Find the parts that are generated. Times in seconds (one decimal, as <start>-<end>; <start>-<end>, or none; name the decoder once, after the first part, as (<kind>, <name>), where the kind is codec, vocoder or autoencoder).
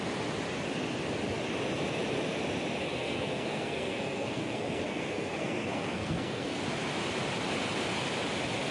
2.9-6.6 (codec, SNAC)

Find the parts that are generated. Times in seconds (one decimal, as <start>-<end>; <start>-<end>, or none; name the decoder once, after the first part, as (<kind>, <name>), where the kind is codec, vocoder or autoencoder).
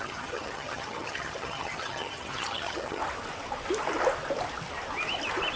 0.0-3.0 (vocoder, HiFi-GAN)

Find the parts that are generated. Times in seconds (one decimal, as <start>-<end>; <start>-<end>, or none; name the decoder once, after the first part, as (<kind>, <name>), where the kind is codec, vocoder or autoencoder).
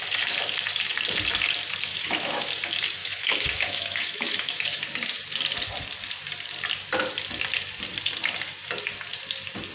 1.9-2.5 (autoencoder, DAC-VAE); 3.0-4.8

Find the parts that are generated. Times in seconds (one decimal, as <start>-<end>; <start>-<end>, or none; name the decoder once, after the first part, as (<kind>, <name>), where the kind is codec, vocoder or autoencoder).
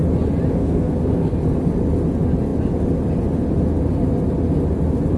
0.5-1.3 (codec, SNAC)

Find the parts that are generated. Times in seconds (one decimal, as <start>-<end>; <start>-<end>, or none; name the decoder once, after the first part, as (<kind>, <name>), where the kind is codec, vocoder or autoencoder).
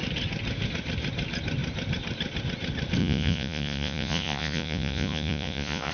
3.0-5.9 (vocoder, Vocos)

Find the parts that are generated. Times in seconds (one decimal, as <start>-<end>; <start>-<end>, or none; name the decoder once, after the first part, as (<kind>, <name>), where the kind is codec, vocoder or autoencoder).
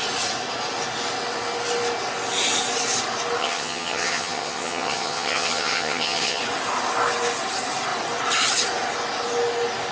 3.4-6.4 (vocoder, HiFi-GAN)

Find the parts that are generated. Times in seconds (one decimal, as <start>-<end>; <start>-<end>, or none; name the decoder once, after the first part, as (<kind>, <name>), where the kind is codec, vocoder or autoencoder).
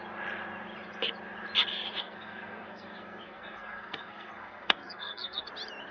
2.0-5.5 (codec, SNAC)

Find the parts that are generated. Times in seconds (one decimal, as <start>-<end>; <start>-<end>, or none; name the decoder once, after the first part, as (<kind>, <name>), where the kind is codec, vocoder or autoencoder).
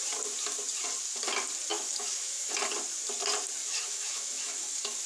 1.7-2.5 (autoencoder, DAC-VAE); 3.6-5.1